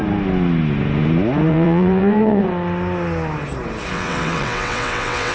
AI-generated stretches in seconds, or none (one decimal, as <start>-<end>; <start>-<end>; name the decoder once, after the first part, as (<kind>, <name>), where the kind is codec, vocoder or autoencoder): 1.5-2.4 (vocoder, WaveNeXt); 3.9-5.3